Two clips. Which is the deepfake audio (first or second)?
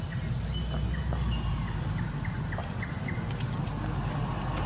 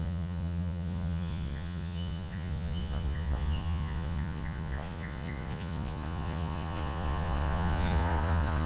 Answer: second